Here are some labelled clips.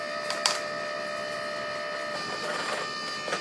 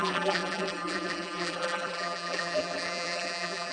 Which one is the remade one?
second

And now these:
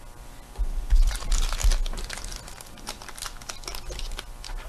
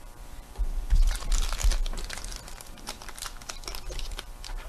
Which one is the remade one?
second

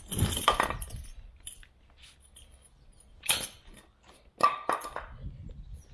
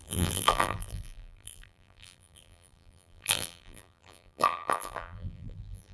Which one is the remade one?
second